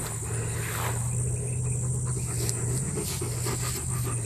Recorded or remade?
recorded